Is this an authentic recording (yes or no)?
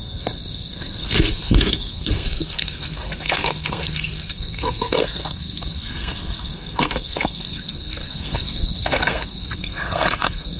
no